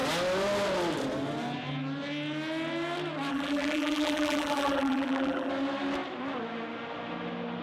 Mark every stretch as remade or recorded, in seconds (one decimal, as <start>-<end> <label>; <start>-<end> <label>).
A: 0.0-3.3 recorded; 3.3-5.5 remade; 5.5-7.6 recorded